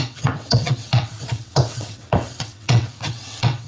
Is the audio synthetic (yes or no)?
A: yes